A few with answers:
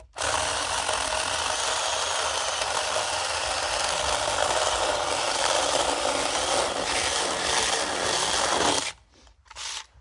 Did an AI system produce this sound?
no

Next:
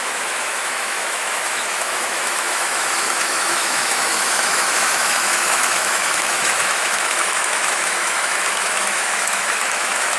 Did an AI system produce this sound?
yes